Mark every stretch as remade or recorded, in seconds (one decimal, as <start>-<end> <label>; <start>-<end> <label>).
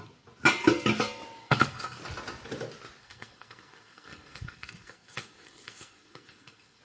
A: 0.0-1.4 recorded; 1.4-2.0 remade; 2.0-3.0 recorded; 3.0-6.8 remade